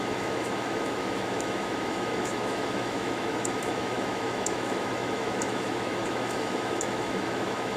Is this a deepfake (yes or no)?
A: yes